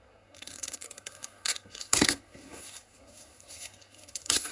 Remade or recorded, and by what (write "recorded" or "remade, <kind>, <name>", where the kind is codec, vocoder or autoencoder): remade, codec, SNAC